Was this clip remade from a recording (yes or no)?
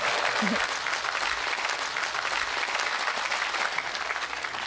no